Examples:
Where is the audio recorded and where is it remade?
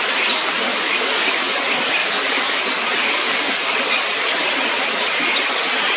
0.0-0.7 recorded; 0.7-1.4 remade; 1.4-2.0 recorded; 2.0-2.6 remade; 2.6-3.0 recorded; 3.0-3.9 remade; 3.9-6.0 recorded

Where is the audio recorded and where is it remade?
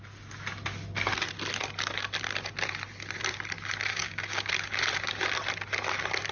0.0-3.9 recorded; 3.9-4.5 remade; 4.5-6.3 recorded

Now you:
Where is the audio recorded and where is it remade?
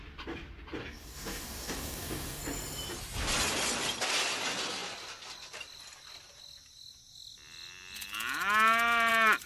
0.0-0.8 recorded; 0.8-2.4 remade; 2.4-9.5 recorded